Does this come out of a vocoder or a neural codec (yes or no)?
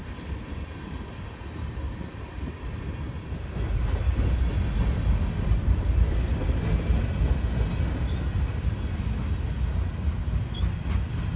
no